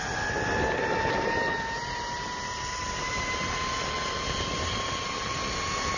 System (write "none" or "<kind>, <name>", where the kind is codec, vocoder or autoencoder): none